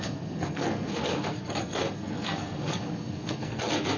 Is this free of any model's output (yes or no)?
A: no